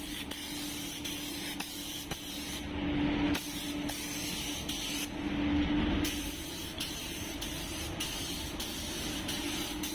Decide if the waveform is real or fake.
real